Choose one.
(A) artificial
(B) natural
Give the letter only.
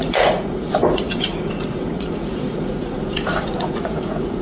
A